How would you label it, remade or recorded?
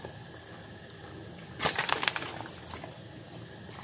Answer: recorded